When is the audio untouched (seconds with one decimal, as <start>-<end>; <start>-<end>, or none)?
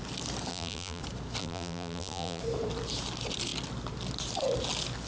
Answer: 0.0-0.5; 1.0-1.4; 2.4-5.1